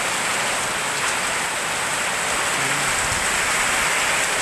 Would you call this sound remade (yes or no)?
no